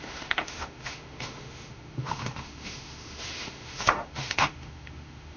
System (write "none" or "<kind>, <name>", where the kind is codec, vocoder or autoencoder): autoencoder, DAC-VAE